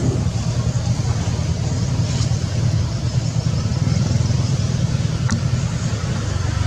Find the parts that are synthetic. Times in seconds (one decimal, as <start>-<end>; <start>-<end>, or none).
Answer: none